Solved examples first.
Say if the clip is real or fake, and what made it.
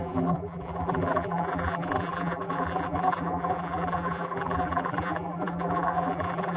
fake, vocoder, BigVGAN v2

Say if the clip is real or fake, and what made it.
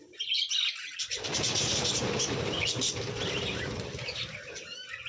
fake, vocoder, BigVGAN v2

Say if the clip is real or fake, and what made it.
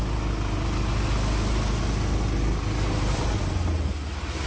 real